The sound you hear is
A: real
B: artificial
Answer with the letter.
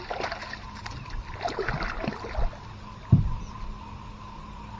A